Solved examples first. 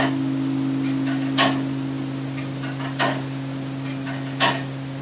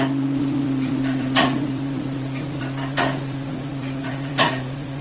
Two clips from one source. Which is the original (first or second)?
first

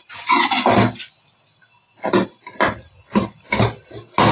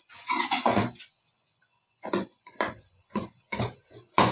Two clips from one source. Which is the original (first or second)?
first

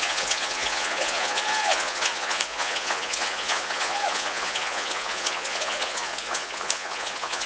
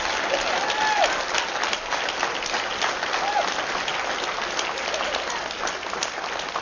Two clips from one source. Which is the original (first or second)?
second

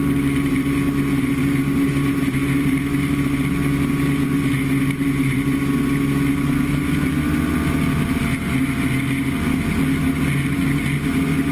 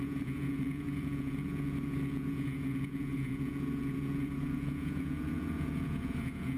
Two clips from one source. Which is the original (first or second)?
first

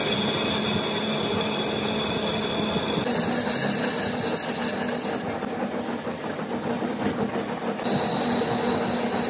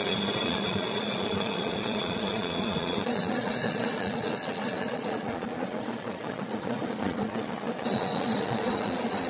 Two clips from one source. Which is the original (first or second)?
first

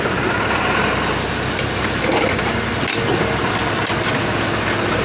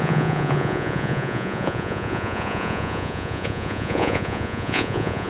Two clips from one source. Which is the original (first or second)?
first